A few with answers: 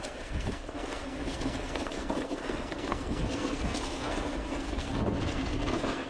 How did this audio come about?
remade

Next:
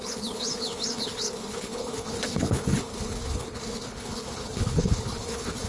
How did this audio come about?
remade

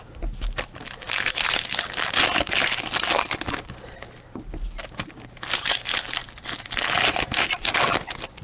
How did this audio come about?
recorded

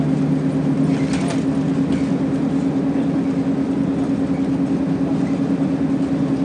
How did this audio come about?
recorded